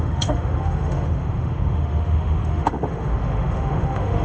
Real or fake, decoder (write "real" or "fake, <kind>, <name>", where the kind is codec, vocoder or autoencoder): fake, autoencoder, DAC-VAE